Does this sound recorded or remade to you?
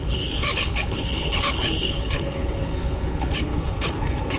remade